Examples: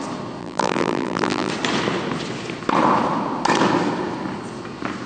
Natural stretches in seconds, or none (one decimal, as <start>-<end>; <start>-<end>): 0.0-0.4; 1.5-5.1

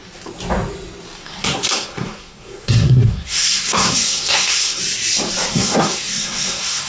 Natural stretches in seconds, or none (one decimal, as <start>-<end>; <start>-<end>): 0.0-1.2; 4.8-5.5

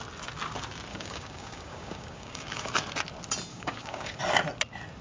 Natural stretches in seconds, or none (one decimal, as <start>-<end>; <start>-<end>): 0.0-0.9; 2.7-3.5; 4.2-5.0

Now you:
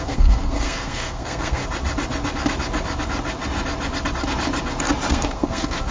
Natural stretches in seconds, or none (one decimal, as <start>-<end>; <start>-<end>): 1.6-5.1